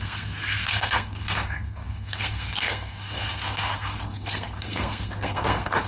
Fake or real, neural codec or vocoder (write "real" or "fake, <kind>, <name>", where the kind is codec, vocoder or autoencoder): fake, codec, SNAC